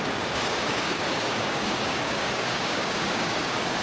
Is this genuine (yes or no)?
no